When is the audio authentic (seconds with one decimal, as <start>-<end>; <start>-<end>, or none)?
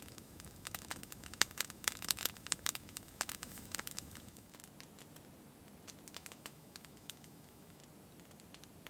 4.6-6.1; 7.8-8.9